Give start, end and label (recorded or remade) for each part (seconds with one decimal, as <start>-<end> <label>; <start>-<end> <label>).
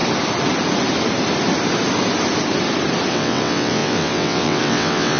0.0-3.1 recorded; 3.1-5.2 remade